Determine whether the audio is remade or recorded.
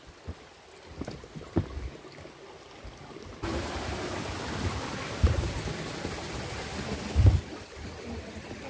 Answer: remade